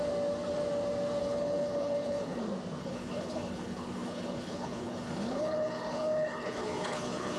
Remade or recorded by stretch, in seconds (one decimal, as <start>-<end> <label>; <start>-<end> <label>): 0.0-1.2 recorded; 1.2-2.4 remade; 2.4-2.8 recorded; 2.8-7.4 remade